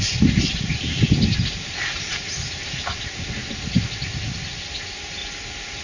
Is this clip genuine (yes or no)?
yes